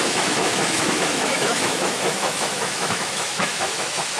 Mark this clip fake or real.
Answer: fake